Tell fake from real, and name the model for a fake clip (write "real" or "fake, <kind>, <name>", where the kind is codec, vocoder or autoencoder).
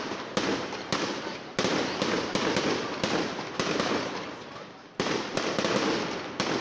real